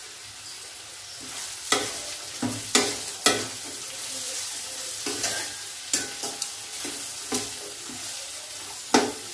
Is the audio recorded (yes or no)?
yes